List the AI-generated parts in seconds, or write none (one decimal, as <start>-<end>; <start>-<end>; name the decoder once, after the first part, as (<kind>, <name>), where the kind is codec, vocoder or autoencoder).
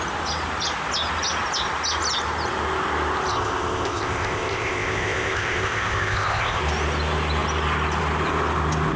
3.3-6.6 (codec, ZipCodec)